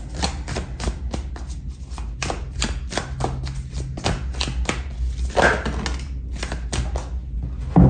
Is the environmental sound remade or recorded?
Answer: recorded